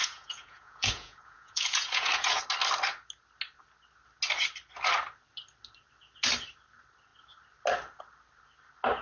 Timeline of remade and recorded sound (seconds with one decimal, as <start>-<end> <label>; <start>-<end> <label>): 0.0-2.4 remade; 2.4-9.0 recorded